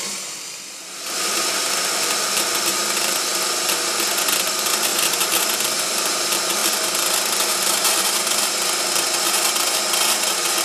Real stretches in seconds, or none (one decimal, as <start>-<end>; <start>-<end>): 0.0-4.9; 5.4-10.6